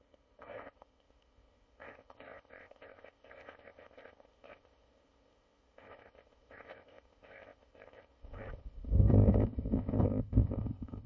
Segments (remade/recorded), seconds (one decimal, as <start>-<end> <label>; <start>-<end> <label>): 0.0-11.1 remade